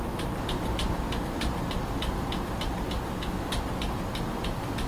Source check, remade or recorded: recorded